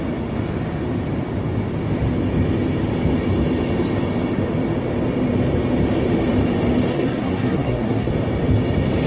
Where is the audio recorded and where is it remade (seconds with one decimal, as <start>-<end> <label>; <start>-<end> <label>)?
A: 0.0-6.9 recorded; 6.9-8.1 remade; 8.1-9.1 recorded